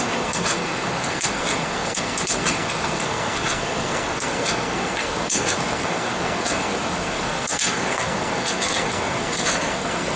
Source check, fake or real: fake